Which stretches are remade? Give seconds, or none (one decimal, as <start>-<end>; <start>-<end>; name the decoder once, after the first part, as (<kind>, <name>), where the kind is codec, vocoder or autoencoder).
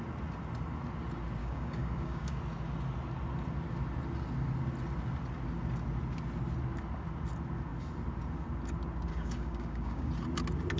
1.4-2.4 (codec, DAC); 9.1-10.1